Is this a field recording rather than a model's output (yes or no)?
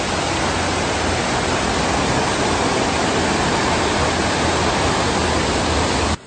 yes